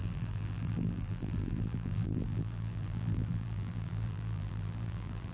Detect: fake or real fake